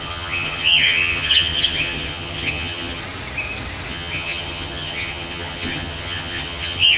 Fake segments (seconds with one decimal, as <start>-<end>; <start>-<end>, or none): 0.0-3.0; 3.9-7.0

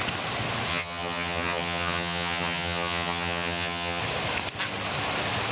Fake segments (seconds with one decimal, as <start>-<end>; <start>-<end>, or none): 0.7-4.0

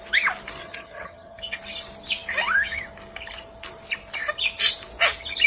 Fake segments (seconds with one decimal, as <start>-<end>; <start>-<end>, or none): 0.6-1.4

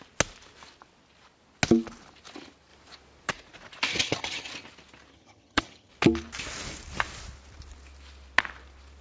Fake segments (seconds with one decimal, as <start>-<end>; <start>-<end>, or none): 3.9-4.5; 5.1-5.9

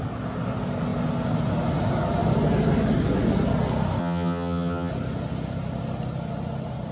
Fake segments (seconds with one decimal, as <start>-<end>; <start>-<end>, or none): 4.0-4.9

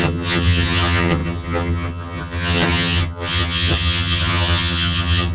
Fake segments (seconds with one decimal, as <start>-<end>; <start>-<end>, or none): 0.0-5.3

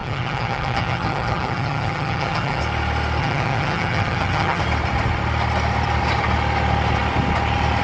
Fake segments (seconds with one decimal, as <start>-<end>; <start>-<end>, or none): 0.0-2.6; 3.2-4.6

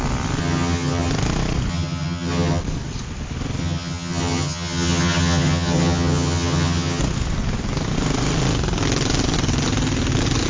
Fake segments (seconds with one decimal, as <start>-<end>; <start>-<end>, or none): 0.4-1.1; 1.7-2.6; 3.6-7.0